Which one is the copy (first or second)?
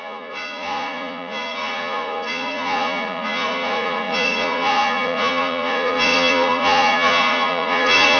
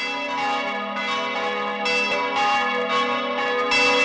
first